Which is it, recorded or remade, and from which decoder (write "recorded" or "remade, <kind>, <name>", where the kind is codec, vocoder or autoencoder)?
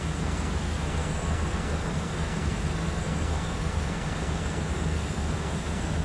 remade, codec, SNAC